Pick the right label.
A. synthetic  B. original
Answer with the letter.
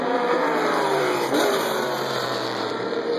A